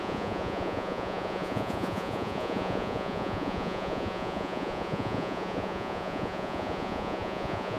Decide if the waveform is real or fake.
fake